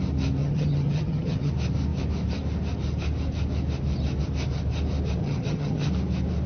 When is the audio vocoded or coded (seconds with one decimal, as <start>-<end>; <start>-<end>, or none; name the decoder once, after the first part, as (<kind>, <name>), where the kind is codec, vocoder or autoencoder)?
0.4-1.5 (vocoder, HiFi-GAN); 5.2-5.9